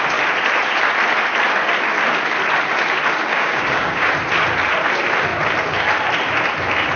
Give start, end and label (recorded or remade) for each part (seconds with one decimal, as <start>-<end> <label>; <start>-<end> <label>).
0.0-3.3 recorded; 3.3-4.1 remade; 4.1-7.0 recorded